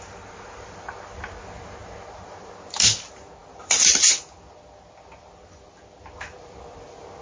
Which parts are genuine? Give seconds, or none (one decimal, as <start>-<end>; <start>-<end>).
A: 0.0-7.2